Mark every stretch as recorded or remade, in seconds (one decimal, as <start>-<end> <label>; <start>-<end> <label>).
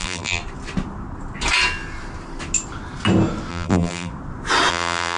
0.0-0.4 remade; 0.4-3.5 recorded; 3.5-4.1 remade; 4.1-4.7 recorded; 4.7-5.2 remade